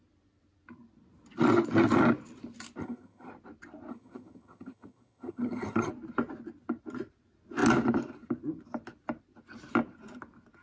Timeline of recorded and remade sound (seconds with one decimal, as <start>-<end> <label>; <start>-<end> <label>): 0.0-2.8 recorded; 2.8-3.3 remade; 3.3-3.9 recorded; 3.9-5.9 remade; 5.9-10.6 recorded